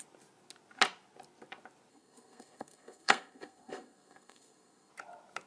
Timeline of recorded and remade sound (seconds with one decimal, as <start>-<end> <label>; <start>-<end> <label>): 0.0-1.9 recorded; 1.9-4.9 remade; 4.9-5.5 recorded